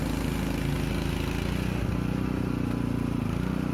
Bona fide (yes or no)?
yes